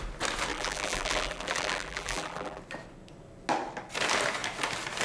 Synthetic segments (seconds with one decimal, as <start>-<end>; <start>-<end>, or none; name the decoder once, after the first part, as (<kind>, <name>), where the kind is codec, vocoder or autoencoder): 0.5-2.6 (vocoder, BigVGAN v2)